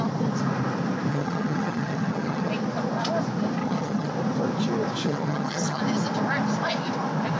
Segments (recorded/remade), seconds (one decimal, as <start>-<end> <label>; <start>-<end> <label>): 0.0-1.1 recorded; 1.1-2.5 remade; 2.5-3.6 recorded; 3.6-4.1 remade; 4.1-5.0 recorded; 5.0-5.8 remade; 5.8-7.4 recorded